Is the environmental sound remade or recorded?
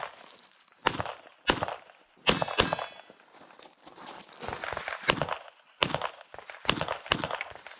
recorded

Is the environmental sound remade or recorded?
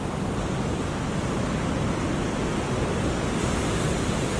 recorded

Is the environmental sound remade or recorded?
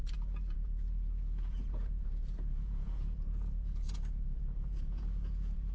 remade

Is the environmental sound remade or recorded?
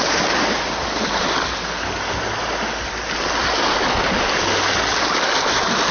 recorded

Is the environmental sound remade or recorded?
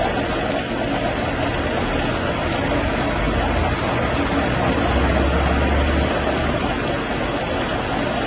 recorded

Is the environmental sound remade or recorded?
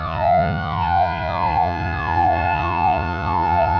remade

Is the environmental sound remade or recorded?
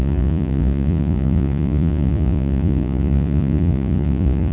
remade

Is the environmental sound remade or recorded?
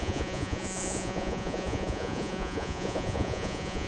remade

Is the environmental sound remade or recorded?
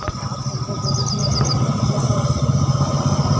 recorded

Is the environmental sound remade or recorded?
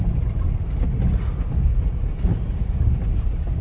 recorded